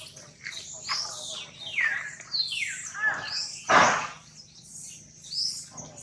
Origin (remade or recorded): recorded